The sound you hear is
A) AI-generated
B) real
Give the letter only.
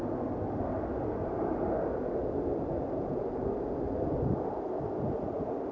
B